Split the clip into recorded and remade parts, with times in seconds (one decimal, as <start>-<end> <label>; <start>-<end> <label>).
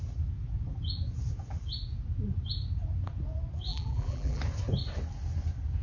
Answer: 0.0-3.7 recorded; 3.7-4.4 remade; 4.4-5.8 recorded